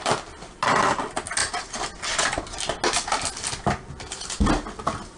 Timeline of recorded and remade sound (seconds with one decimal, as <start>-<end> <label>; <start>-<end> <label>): 0.0-5.2 recorded